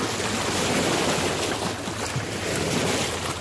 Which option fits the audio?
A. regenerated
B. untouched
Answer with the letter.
B